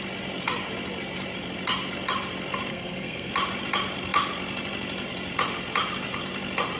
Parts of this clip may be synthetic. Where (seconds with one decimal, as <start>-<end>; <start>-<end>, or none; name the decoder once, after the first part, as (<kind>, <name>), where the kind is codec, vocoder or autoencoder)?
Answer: 2.7-3.3 (codec, SNAC)